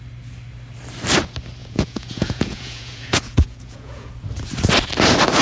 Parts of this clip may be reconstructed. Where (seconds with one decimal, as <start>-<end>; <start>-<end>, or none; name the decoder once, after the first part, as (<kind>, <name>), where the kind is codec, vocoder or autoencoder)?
1.6-4.1 (vocoder, Vocos)